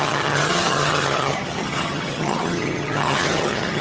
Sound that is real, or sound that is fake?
fake